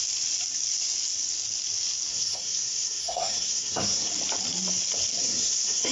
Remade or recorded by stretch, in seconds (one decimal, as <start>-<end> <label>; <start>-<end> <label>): 0.0-2.1 recorded; 2.1-4.1 remade; 4.1-5.2 recorded; 5.2-5.9 remade